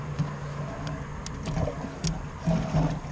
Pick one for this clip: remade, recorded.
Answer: recorded